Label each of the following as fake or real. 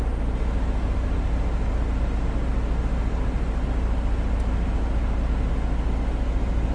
real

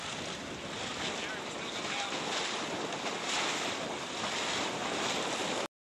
real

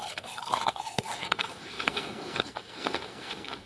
fake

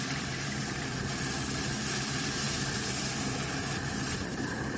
fake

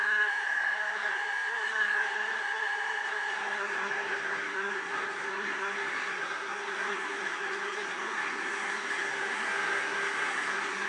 fake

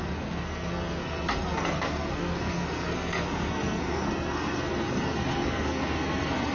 fake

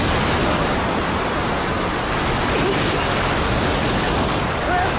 real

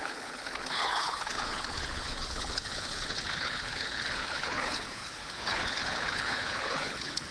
fake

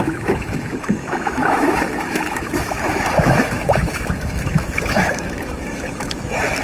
fake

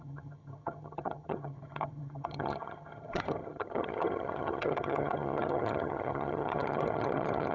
fake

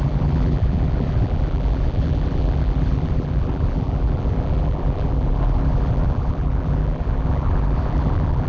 fake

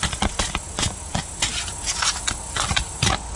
real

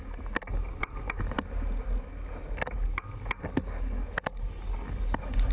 real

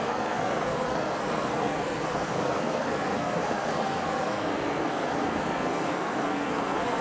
fake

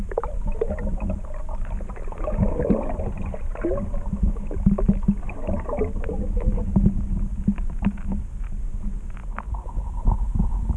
real